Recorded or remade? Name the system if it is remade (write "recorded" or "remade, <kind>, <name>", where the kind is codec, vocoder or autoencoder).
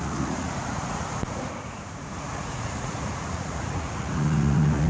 remade, vocoder, Vocos